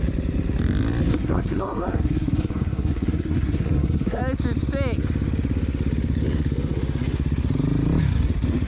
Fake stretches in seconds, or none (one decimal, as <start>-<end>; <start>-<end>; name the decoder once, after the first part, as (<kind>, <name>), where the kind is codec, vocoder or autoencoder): 1.1-4.2 (codec, SNAC)